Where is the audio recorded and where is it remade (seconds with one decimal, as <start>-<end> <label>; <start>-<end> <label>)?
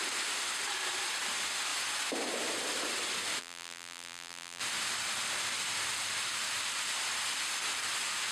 0.0-3.4 recorded; 3.4-4.6 remade; 4.6-8.3 recorded